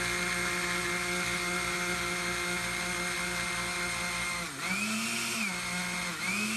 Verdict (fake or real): real